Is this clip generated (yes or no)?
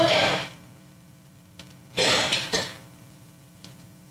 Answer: yes